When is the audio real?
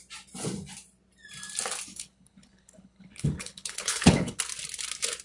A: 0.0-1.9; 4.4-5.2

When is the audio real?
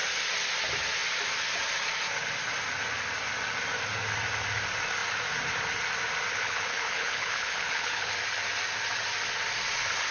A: 0.0-6.3; 8.1-10.1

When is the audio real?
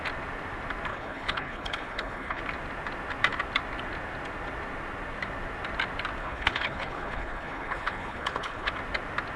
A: 0.0-0.9; 2.4-6.2; 8.7-9.4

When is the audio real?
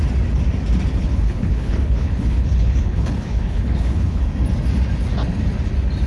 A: 0.0-1.0; 4.2-6.1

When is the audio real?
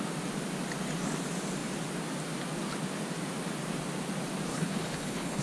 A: 0.0-4.5